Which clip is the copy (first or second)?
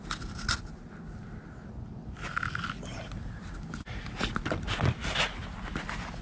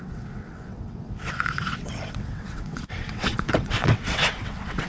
second